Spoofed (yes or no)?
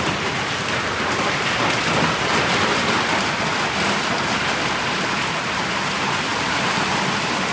no